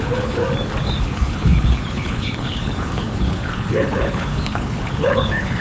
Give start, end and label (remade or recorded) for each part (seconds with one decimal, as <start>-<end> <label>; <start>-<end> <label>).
0.0-0.4 remade; 0.4-1.0 recorded; 1.0-5.6 remade

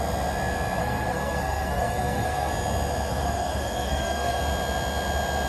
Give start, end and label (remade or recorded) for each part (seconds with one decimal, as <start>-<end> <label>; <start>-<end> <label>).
0.0-0.8 recorded; 0.8-2.5 remade; 2.5-3.1 recorded; 3.1-4.4 remade; 4.4-5.5 recorded

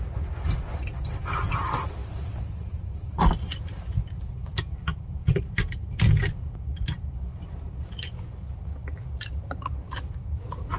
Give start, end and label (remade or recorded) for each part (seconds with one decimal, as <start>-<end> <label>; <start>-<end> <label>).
0.0-2.0 recorded; 2.0-3.4 remade; 3.4-4.9 recorded; 4.9-5.9 remade; 5.9-8.8 recorded; 8.8-10.1 remade; 10.1-10.8 recorded

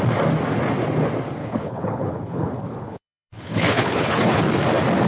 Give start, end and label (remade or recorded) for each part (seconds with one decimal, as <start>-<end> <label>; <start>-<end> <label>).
0.0-1.4 recorded; 1.4-4.5 remade; 4.5-5.1 recorded

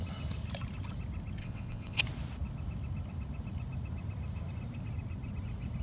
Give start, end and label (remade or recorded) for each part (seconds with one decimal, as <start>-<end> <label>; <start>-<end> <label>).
0.0-1.4 recorded; 1.4-2.0 remade; 2.0-5.8 recorded